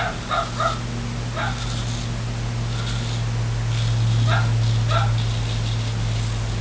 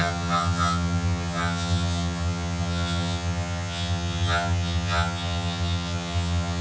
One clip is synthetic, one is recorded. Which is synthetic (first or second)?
second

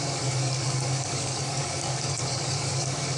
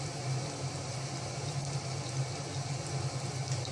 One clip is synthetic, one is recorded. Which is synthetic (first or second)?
first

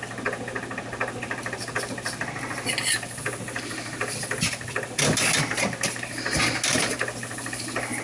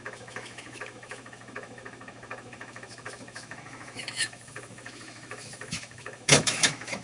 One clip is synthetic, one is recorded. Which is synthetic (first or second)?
second